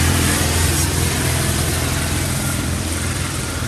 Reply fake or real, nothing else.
fake